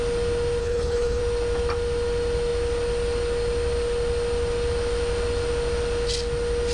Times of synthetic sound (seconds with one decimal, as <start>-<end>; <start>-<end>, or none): 0.6-1.2